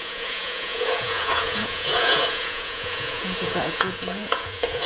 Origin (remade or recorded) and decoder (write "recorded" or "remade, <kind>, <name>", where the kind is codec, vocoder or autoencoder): remade, vocoder, Vocos